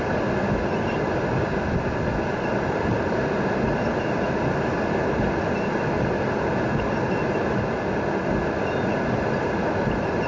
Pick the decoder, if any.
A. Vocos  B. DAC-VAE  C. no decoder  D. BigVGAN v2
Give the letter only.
C